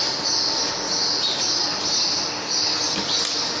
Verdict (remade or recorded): recorded